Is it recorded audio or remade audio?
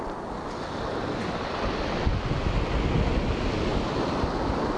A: recorded